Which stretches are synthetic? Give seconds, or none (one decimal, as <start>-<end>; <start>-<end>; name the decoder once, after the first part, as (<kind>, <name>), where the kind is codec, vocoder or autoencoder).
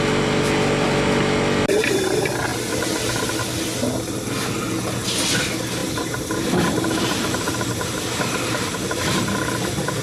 5.8-9.3 (vocoder, BigVGAN v2)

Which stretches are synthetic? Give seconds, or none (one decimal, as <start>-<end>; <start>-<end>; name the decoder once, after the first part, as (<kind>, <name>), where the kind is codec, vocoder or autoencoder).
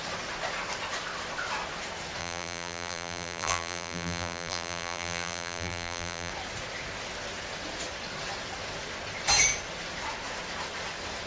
2.2-6.3 (vocoder, BigVGAN v2)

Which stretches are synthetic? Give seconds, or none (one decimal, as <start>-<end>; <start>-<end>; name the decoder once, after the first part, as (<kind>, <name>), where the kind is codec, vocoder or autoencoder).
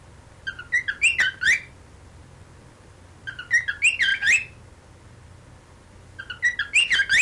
none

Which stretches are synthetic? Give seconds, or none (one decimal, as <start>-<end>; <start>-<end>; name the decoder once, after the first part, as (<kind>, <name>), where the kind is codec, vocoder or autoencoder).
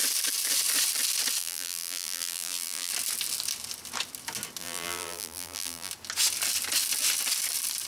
1.4-2.9 (vocoder, BigVGAN v2); 4.6-5.9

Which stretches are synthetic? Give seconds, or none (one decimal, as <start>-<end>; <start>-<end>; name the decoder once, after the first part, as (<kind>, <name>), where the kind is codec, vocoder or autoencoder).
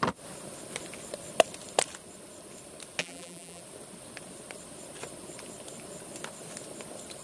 3.0-3.6 (vocoder, BigVGAN v2)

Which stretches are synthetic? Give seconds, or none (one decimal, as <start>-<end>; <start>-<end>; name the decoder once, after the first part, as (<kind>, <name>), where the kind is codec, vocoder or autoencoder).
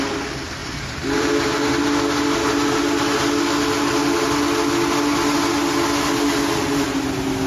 0.6-1.3 (vocoder, BigVGAN v2)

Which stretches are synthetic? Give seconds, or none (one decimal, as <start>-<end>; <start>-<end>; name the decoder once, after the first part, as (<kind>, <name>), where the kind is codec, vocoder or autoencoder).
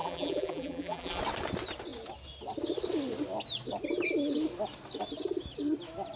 0.0-1.2 (vocoder, BigVGAN v2)